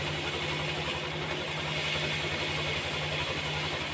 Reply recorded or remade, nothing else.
recorded